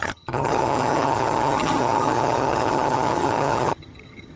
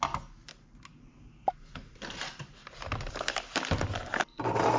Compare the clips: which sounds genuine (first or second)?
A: second